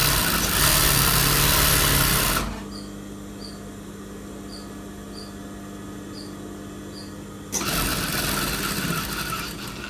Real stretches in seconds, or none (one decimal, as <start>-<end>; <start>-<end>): 0.0-9.9